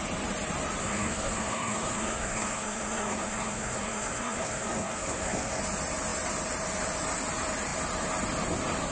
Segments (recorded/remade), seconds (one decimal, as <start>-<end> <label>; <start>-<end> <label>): 0.0-0.8 recorded; 0.8-5.6 remade; 5.6-8.9 recorded